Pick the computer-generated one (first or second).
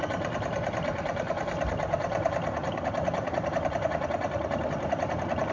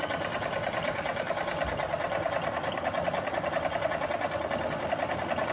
first